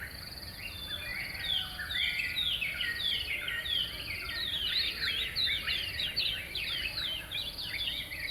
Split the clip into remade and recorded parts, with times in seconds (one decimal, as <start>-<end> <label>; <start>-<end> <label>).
0.0-1.1 remade; 1.1-6.1 recorded; 6.1-8.3 remade